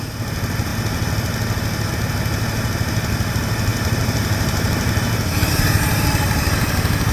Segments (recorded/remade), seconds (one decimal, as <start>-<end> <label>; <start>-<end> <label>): 0.0-3.7 recorded; 3.7-6.5 remade; 6.5-7.1 recorded